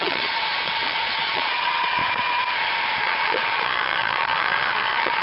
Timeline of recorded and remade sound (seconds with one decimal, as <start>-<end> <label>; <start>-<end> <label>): 0.0-2.0 remade; 2.0-3.0 recorded; 3.0-5.2 remade